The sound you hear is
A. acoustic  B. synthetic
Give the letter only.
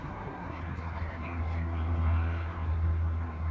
B